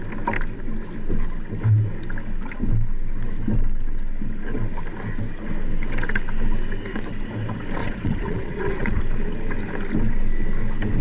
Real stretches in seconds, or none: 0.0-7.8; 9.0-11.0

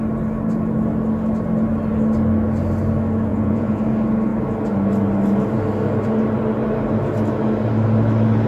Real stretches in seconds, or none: 0.0-3.3; 3.8-8.5

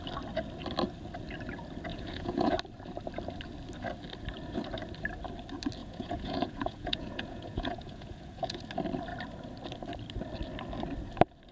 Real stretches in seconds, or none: 0.0-1.9; 2.6-5.8; 8.6-11.5

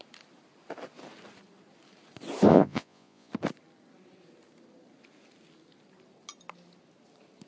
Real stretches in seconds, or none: 0.0-2.5; 3.3-7.5

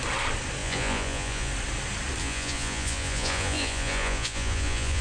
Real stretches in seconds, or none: 0.0-0.6; 1.5-2.2

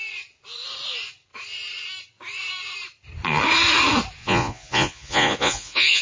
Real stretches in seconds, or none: 0.0-4.2

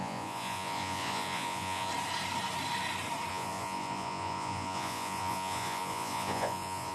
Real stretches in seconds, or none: 1.9-3.3

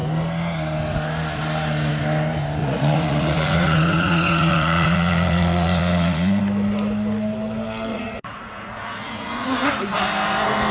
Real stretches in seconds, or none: 0.0-2.6; 6.4-7.9; 9.7-10.7